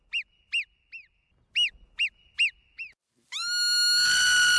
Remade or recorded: recorded